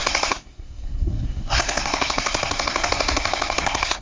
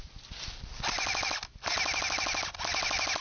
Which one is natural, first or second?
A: second